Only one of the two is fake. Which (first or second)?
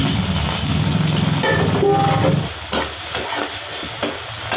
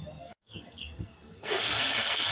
second